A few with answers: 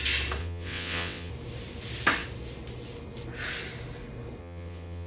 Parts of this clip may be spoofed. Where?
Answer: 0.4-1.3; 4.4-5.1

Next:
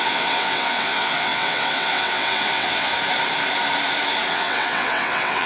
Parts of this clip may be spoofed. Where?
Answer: 0.0-2.9; 4.3-5.5

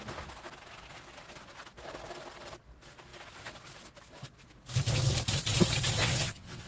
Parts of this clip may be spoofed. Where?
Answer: 6.0-6.7

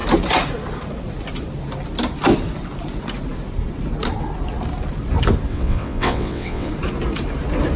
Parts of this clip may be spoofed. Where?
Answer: 5.5-6.7

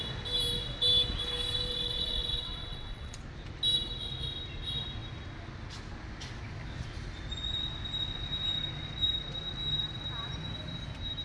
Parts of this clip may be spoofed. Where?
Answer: 1.7-3.2

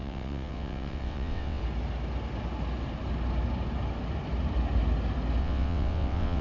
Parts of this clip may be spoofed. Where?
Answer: 0.0-1.6; 5.4-6.4

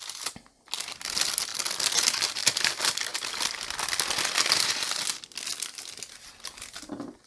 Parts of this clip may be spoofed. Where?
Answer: none

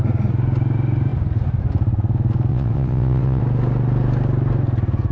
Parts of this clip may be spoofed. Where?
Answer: 2.5-3.4